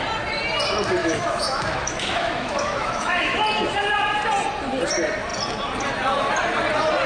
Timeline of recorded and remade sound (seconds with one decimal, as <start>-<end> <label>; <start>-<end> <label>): 0.0-1.0 recorded; 1.0-3.4 remade; 3.4-7.1 recorded